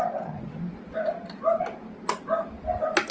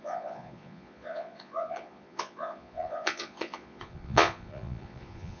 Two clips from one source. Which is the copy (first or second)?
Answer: second